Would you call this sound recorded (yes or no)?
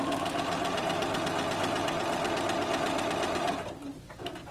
yes